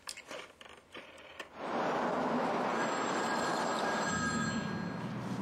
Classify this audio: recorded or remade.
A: recorded